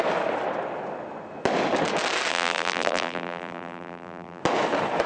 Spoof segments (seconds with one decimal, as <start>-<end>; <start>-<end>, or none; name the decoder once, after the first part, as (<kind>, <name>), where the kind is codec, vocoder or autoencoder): 2.3-4.4 (vocoder, BigVGAN v2)